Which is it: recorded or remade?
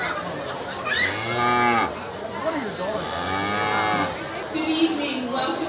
recorded